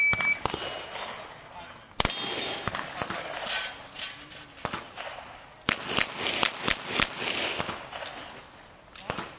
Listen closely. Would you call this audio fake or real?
real